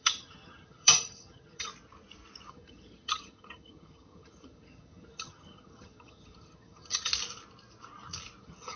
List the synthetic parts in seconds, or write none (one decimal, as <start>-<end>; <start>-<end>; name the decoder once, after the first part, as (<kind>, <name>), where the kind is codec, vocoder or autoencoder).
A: 0.0-1.7 (vocoder, HiFi-GAN); 2.5-7.1; 8.4-8.8